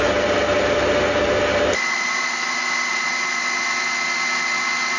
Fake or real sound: real